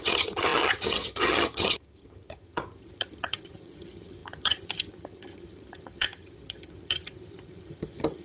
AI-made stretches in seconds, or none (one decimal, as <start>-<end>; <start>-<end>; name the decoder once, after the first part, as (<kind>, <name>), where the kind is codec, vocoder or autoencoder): 0.0-8.2 (vocoder, HiFi-GAN)